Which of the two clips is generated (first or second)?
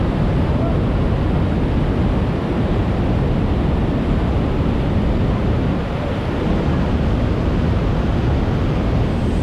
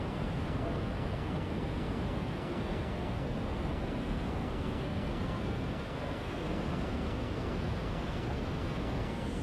second